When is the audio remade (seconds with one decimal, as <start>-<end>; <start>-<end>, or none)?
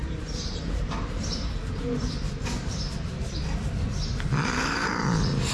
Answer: 0.0-3.3